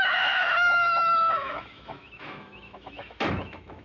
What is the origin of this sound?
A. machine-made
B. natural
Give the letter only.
A